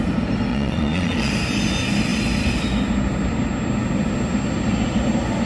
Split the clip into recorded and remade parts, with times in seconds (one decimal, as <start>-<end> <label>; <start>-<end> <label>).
0.0-0.5 recorded; 0.5-1.3 remade; 1.3-5.5 recorded